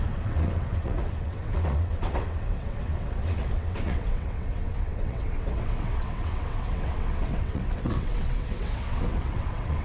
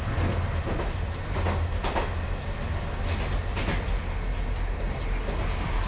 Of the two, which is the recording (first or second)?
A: second